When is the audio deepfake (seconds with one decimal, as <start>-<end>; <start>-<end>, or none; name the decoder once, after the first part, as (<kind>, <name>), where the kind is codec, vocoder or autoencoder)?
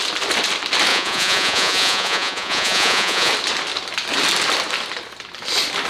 0.9-3.3 (vocoder, Vocos)